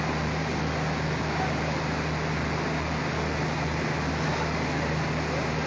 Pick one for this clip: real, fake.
real